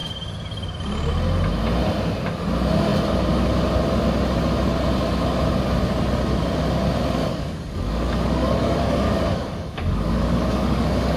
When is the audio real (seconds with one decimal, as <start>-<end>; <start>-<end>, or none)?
0.0-7.2